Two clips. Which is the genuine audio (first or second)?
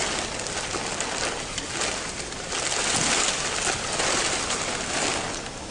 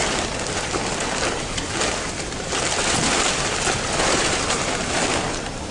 first